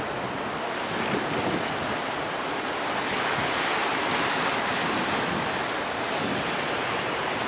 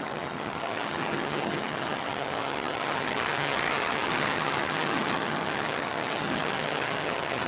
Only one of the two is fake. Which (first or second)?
second